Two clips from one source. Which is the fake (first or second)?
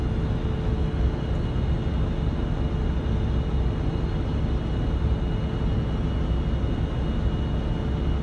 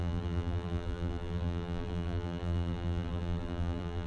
second